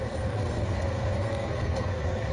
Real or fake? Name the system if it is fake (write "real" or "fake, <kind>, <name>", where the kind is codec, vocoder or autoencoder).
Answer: fake, codec, SNAC